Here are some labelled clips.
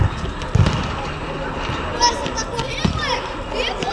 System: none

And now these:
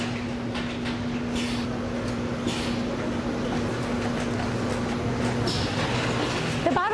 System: none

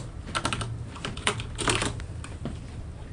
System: none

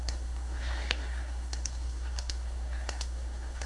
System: codec, SNAC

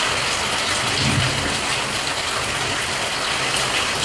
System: none